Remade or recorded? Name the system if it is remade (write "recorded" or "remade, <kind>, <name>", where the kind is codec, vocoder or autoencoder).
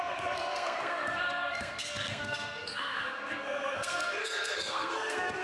remade, codec, SNAC